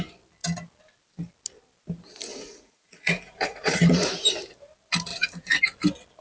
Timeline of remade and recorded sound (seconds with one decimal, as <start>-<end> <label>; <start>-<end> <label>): 0.0-2.3 recorded; 2.3-4.1 remade; 4.1-5.1 recorded; 5.1-5.6 remade; 5.6-6.2 recorded